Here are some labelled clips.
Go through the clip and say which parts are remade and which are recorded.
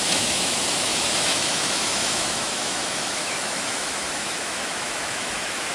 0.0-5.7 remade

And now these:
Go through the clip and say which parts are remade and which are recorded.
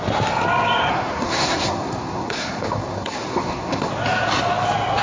0.0-0.9 recorded; 0.9-3.9 remade; 3.9-5.0 recorded